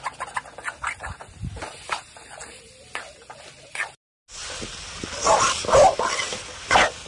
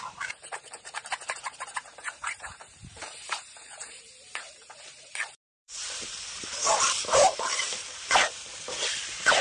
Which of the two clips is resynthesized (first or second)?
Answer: second